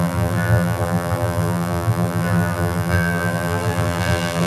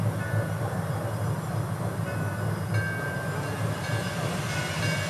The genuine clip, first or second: second